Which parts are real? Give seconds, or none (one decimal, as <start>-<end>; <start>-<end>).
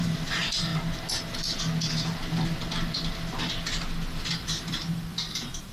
0.7-4.1